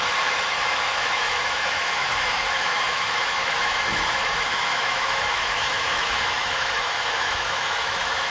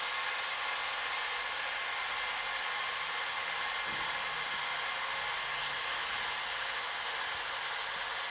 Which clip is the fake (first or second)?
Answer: first